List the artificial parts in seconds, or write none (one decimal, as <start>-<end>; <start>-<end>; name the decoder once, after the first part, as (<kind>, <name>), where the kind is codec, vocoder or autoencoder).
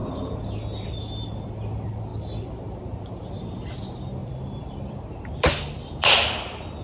4.2-5.0 (vocoder, BigVGAN v2)